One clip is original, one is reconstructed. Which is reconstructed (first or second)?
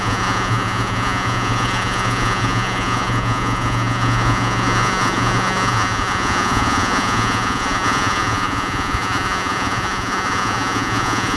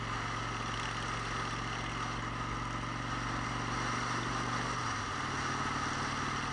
first